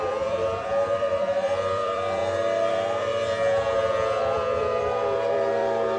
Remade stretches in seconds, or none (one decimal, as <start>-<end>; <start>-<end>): 0.0-2.2; 2.7-3.1; 4.2-6.0